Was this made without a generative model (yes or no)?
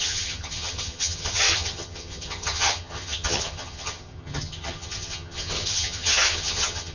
no